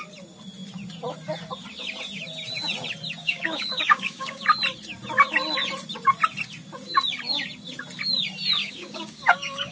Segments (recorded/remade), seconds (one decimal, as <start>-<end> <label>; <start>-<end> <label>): 0.0-3.2 recorded; 3.2-4.4 remade; 4.4-8.6 recorded; 8.6-9.7 remade